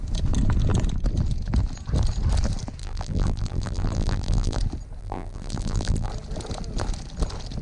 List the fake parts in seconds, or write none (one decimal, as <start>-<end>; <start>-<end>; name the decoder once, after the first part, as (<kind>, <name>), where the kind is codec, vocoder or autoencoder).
2.8-4.6 (vocoder, BigVGAN v2); 5.0-6.1